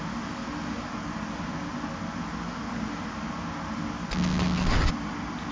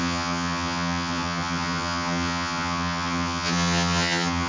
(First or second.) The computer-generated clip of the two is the second